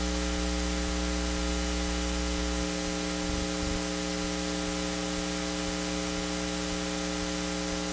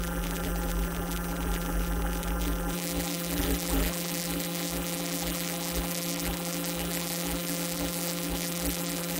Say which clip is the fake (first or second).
second